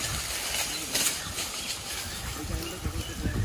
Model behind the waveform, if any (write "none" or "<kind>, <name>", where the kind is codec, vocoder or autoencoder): none